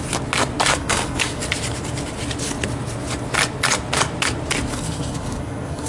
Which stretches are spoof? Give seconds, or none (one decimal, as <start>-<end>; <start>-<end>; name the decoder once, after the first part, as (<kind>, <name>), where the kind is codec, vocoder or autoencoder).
0.7-1.4 (codec, SNAC); 4.7-5.9